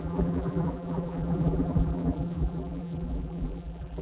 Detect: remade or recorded remade